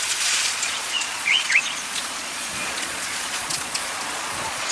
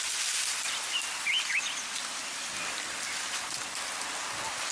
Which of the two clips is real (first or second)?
second